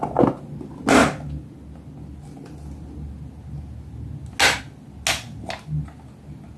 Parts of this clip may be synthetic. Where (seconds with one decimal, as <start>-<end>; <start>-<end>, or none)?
none